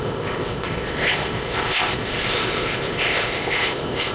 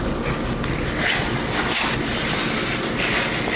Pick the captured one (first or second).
second